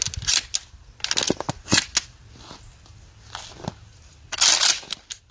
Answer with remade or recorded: recorded